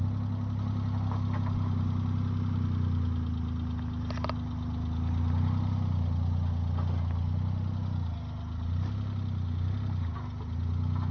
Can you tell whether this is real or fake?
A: real